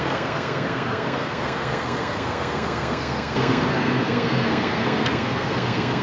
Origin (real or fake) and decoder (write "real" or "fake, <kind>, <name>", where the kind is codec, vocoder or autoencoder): fake, codec, SNAC